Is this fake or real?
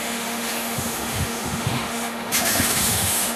fake